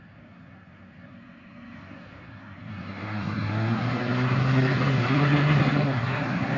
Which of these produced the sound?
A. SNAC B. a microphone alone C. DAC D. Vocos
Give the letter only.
A